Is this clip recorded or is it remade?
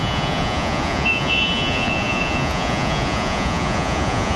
remade